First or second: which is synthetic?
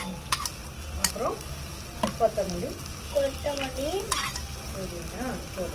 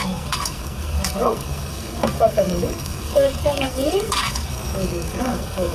second